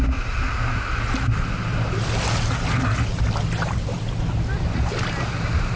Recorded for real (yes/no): yes